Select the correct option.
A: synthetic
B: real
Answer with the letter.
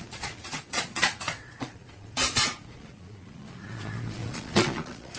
A